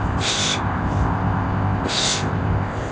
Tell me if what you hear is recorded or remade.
remade